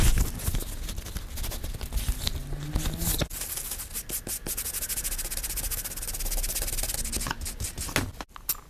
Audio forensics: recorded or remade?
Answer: recorded